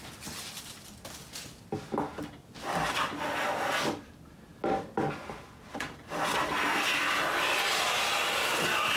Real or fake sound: real